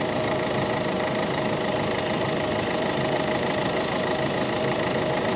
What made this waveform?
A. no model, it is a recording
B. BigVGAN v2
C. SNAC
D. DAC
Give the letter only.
B